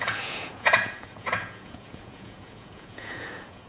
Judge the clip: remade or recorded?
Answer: remade